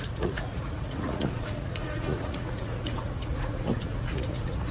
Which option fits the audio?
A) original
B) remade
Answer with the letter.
B